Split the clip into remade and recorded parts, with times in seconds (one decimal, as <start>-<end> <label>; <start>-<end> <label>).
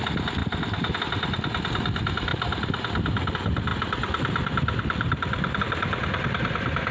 0.0-0.4 recorded; 0.4-1.0 remade; 1.0-2.3 recorded; 2.3-3.3 remade; 3.3-6.9 recorded